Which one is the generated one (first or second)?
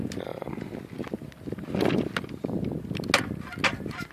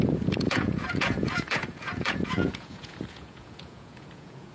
second